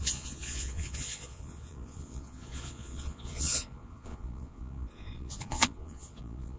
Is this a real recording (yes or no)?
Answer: no